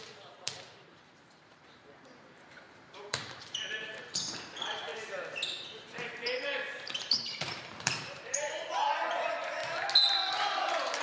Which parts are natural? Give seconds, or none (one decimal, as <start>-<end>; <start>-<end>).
4.9-5.6; 9.6-10.3